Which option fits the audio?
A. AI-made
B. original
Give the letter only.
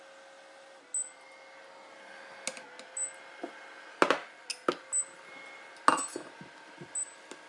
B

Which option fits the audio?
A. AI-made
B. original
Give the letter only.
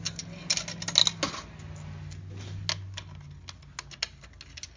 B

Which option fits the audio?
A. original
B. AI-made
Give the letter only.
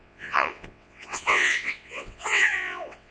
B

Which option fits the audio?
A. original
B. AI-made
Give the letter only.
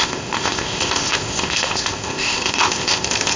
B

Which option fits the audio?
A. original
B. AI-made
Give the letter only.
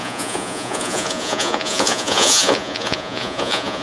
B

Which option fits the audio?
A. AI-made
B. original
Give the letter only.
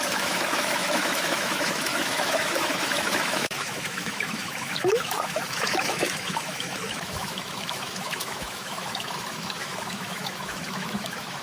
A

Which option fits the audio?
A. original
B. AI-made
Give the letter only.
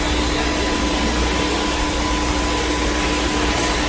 A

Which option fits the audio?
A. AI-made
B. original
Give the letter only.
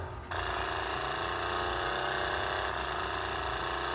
B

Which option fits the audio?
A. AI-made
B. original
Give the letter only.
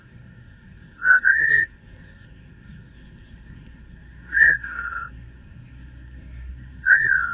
A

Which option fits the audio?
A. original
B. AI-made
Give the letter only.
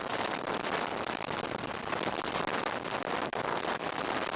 A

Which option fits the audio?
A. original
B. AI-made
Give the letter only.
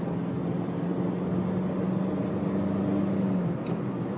A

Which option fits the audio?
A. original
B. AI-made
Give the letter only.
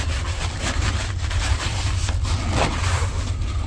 A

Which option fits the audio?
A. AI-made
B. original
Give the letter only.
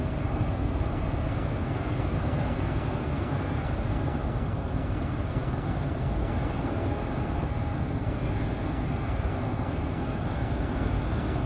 A